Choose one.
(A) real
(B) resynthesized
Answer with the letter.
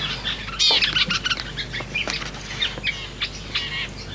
A